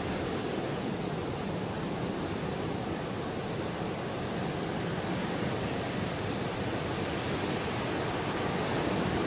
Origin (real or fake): real